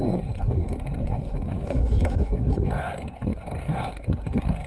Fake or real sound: fake